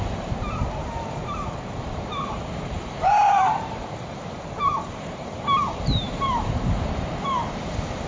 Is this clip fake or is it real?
fake